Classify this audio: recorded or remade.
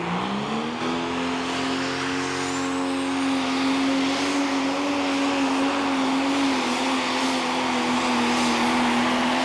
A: recorded